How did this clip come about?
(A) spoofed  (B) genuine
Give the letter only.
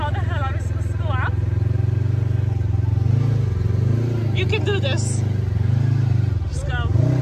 B